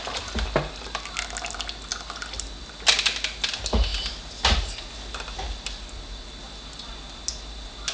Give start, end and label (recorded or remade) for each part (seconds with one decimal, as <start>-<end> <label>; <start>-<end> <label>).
0.0-7.9 recorded